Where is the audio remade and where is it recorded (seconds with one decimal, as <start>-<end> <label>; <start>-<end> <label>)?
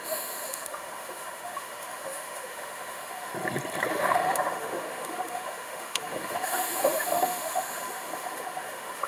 0.0-3.3 remade; 3.3-3.9 recorded; 3.9-9.1 remade